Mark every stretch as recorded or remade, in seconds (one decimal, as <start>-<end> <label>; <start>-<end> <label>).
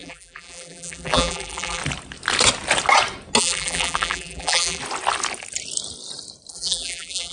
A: 0.0-1.8 remade; 1.8-3.4 recorded; 3.4-4.8 remade; 4.8-6.5 recorded; 6.5-7.3 remade